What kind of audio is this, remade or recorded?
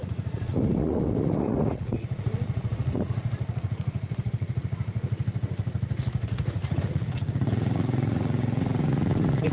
remade